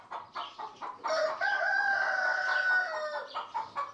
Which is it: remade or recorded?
recorded